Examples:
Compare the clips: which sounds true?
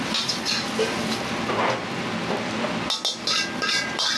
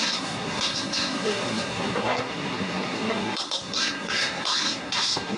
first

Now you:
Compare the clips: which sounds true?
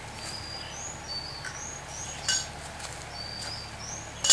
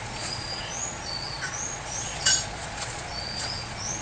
first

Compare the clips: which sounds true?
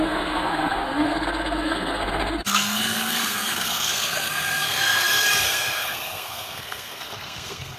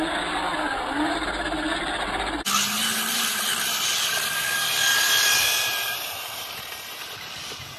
second